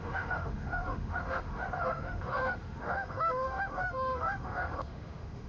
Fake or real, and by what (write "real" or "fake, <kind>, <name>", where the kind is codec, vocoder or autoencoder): fake, autoencoder, DAC-VAE